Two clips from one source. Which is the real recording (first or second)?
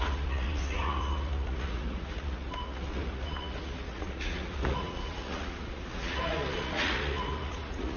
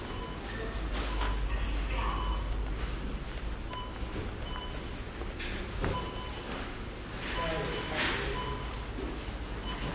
second